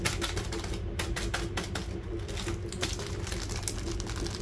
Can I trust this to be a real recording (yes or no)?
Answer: yes